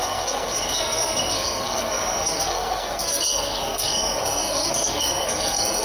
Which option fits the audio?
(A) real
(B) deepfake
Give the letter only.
B